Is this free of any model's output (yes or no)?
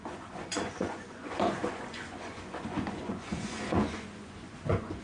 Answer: no